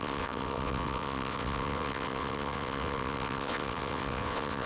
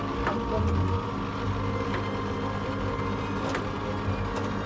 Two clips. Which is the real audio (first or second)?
second